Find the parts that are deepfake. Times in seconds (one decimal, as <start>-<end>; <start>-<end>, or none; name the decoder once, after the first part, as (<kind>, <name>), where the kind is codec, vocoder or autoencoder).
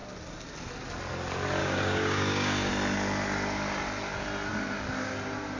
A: 1.6-2.7 (codec, DAC)